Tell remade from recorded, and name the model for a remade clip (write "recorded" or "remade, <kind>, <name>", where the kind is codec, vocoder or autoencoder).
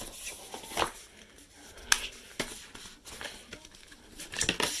recorded